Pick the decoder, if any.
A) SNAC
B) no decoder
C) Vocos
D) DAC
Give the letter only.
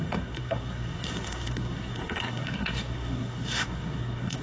A